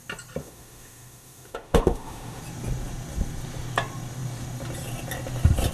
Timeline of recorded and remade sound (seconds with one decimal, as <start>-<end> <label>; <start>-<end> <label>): 0.0-0.4 recorded; 0.4-2.4 remade; 2.4-5.7 recorded